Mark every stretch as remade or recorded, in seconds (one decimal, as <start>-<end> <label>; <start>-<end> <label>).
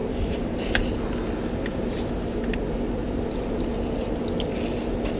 0.0-0.9 remade; 0.9-1.7 recorded; 1.7-2.5 remade; 2.5-3.0 recorded; 3.0-3.7 remade; 3.7-5.2 recorded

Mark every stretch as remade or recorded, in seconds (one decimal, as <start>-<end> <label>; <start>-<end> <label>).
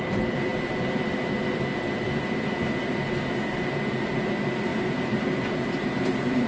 0.0-6.5 remade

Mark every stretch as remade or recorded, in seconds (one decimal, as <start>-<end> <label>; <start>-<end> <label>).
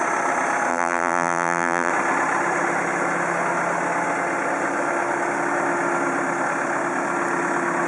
0.0-0.7 recorded; 0.7-1.9 remade; 1.9-7.9 recorded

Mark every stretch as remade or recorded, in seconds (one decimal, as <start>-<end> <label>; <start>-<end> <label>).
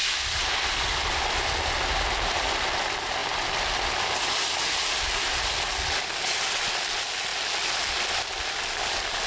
0.0-7.3 recorded; 7.3-9.3 remade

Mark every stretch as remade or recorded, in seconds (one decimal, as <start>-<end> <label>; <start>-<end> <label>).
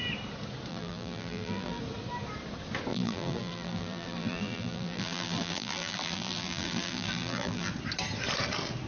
0.0-0.7 recorded; 0.7-1.8 remade; 1.8-2.9 recorded; 2.9-7.7 remade; 7.7-8.9 recorded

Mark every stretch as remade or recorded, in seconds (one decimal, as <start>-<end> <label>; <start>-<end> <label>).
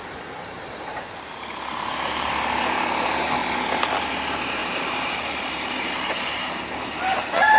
0.0-0.9 recorded; 0.9-2.3 remade; 2.3-4.6 recorded; 4.6-6.6 remade; 6.6-7.6 recorded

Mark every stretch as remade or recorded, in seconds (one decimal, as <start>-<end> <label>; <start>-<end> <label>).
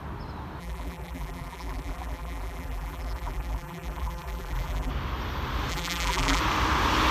0.0-0.6 recorded; 0.6-4.9 remade; 4.9-5.7 recorded; 5.7-6.4 remade; 6.4-7.1 recorded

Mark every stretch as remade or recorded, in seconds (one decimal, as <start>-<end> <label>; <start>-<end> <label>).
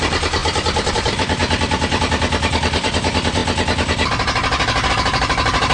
0.0-0.4 remade; 0.4-0.9 recorded; 0.9-3.4 remade; 3.4-4.9 recorded; 4.9-5.7 remade